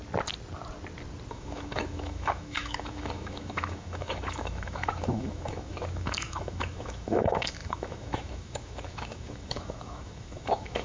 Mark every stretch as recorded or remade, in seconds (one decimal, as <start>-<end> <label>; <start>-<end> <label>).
0.0-1.3 recorded; 1.3-10.8 remade